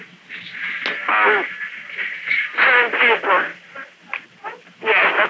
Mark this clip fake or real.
real